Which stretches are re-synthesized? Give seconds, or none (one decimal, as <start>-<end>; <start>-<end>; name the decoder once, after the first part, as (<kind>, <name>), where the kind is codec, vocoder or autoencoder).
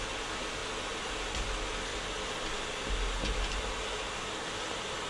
none